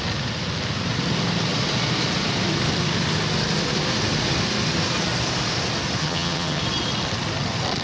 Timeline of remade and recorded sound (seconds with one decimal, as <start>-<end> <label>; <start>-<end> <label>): 0.0-6.0 recorded; 6.0-6.6 remade; 6.6-7.8 recorded